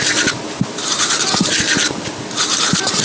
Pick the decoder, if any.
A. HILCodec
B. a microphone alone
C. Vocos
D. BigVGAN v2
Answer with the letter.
B